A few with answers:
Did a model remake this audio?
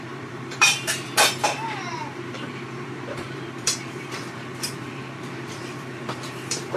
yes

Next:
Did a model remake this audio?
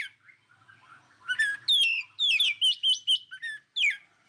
no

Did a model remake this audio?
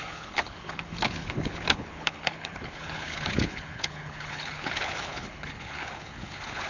yes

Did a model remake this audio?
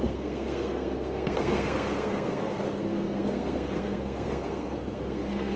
yes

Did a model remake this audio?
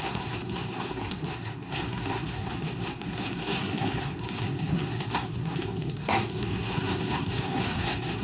yes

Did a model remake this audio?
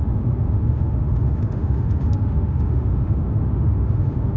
yes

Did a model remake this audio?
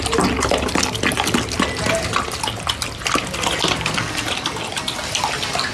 no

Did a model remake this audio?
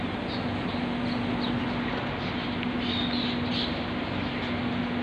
no